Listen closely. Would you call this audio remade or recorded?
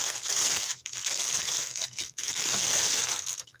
remade